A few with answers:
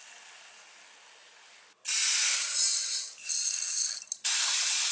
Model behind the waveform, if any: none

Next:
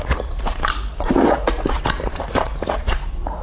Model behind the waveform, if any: vocoder, Vocos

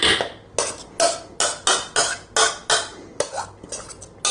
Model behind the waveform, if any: none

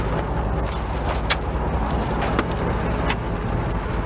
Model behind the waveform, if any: none